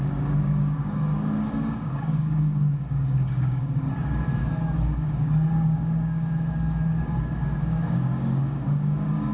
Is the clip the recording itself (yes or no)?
no